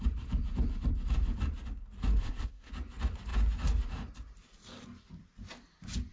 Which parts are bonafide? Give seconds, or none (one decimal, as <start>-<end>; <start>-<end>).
0.0-2.2; 2.7-6.1